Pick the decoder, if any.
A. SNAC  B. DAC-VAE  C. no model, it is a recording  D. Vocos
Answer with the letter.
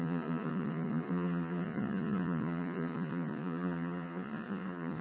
D